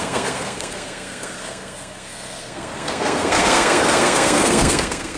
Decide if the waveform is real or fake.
fake